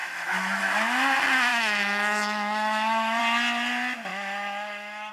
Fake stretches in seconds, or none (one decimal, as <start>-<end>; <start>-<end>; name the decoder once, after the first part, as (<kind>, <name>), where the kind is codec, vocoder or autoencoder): 0.0-0.6 (autoencoder, DAC-VAE); 1.5-3.2; 4.1-5.1